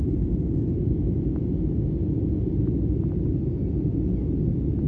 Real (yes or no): yes